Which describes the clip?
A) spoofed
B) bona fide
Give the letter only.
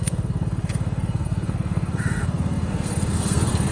A